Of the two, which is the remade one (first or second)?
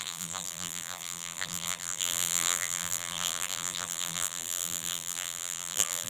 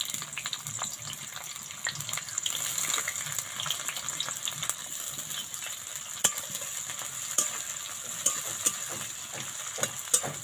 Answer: first